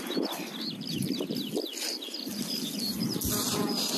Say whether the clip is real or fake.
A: real